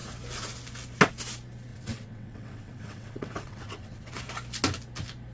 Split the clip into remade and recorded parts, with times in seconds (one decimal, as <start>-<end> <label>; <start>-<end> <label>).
0.0-1.7 recorded; 1.7-4.2 remade; 4.2-5.3 recorded